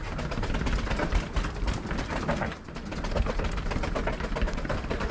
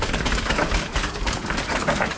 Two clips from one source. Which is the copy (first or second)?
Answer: second